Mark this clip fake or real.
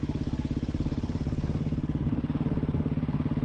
real